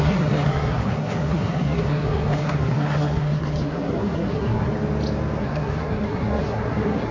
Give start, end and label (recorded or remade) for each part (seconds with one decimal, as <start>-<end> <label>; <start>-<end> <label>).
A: 0.0-4.7 remade; 4.7-5.4 recorded; 5.4-7.1 remade